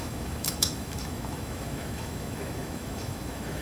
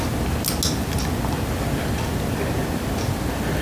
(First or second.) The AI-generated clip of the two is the first